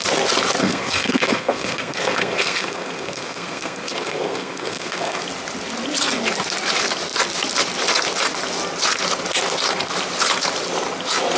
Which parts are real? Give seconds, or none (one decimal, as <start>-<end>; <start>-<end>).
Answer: 0.0-0.6; 5.2-11.4